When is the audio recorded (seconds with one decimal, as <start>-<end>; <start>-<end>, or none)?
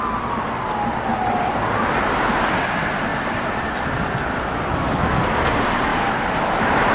0.0-1.1; 1.8-5.9